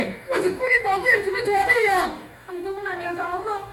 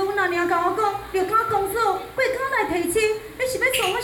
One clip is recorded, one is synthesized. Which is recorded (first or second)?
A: second